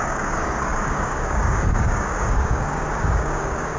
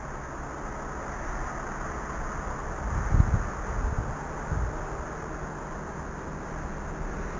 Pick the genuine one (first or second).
second